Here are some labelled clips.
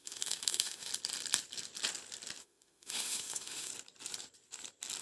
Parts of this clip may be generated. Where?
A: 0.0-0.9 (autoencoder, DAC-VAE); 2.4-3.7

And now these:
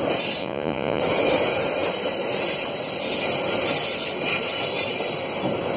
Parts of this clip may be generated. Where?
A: 0.4-1.0 (vocoder, Vocos)

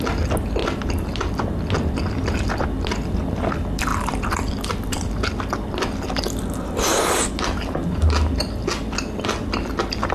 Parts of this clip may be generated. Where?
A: 0.6-1.3 (vocoder, BigVGAN v2); 3.9-5.3

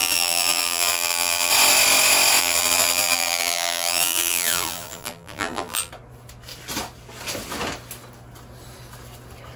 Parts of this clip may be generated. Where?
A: 0.0-1.5 (vocoder, BigVGAN v2); 2.4-5.9